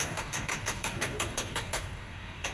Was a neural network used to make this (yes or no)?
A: yes